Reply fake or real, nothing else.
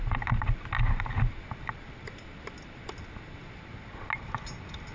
real